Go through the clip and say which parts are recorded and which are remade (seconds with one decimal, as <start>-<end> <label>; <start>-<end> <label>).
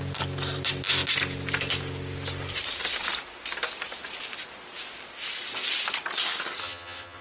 0.0-6.6 recorded; 6.6-7.2 remade